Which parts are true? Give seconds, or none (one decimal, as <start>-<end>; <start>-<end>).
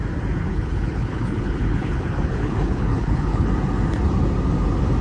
0.0-0.5; 3.5-5.0